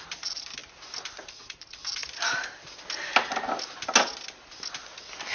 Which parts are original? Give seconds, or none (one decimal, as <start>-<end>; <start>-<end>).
0.6-1.4; 2.0-5.3